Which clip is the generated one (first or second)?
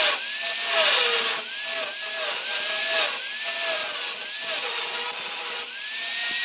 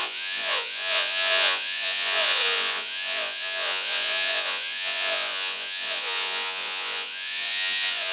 second